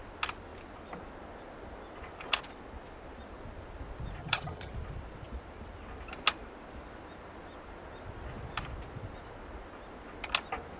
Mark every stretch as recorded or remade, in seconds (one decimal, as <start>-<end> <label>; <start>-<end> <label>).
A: 0.0-4.2 recorded; 4.2-4.7 remade; 4.7-10.8 recorded